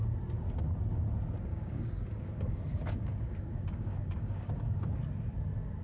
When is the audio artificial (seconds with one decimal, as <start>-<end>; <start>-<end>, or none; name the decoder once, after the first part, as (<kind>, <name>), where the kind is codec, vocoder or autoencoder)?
1.5-5.0 (codec, DAC)

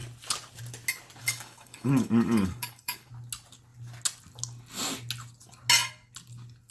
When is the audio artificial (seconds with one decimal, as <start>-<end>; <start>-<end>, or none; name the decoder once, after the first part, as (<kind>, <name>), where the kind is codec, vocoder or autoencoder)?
1.2-3.1 (codec, DAC)

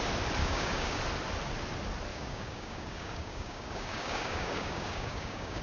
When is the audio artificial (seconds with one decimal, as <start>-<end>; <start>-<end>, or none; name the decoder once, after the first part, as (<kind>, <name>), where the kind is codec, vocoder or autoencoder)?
0.4-1.0 (codec, DAC); 2.1-5.6

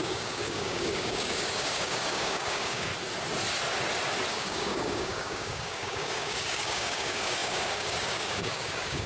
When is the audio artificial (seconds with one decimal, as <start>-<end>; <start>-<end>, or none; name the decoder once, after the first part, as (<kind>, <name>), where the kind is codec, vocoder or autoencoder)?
0.0-2.9 (codec, DAC); 4.3-9.1

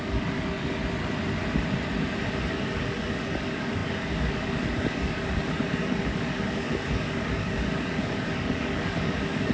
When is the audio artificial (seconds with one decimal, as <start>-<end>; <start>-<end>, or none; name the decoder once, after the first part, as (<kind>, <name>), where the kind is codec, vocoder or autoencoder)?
0.0-0.8 (codec, DAC); 2.5-9.5

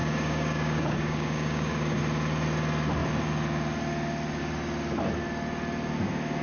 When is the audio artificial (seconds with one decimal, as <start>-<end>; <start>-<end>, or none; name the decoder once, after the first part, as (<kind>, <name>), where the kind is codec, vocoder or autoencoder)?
0.0-2.0 (codec, DAC)

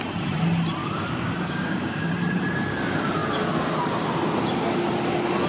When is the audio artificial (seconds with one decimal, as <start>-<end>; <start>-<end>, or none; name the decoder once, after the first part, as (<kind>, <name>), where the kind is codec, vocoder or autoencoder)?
0.8-2.1 (codec, DAC)